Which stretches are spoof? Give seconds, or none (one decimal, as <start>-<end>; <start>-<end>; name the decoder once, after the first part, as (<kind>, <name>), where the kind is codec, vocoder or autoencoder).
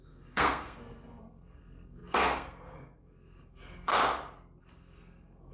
0.0-3.9 (codec, SNAC); 4.6-5.5